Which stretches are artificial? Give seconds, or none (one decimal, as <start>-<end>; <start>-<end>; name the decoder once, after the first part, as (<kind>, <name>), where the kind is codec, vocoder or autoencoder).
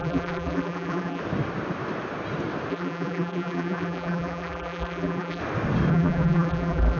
0.0-1.2 (vocoder, BigVGAN v2); 2.7-5.4; 5.9-7.0